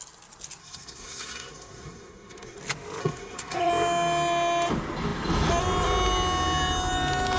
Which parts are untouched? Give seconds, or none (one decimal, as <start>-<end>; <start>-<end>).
0.0-0.6; 2.6-3.0; 3.7-7.4